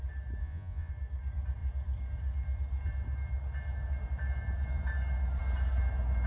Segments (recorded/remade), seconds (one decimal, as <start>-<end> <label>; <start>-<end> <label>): 0.0-0.4 recorded; 0.4-0.9 remade; 0.9-6.3 recorded